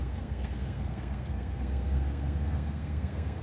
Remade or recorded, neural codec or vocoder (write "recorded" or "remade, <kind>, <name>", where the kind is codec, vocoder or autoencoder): remade, codec, SNAC